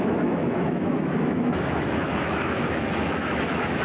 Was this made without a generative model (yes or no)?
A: no